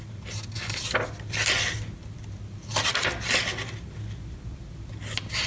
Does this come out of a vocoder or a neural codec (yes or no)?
no